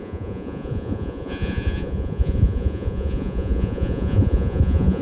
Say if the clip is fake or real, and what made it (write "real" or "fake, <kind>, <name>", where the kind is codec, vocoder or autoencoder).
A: fake, vocoder, Vocos